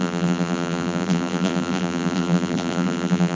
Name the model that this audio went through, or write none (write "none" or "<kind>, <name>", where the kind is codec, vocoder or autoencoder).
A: vocoder, BigVGAN v2